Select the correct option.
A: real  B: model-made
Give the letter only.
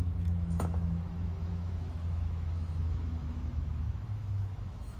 B